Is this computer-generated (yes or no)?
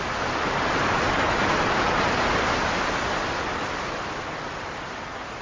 no